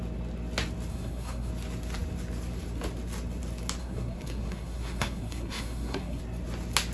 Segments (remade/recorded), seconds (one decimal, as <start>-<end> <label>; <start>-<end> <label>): 0.0-0.9 recorded; 0.9-1.5 remade; 1.5-3.8 recorded; 3.8-6.2 remade; 6.2-6.9 recorded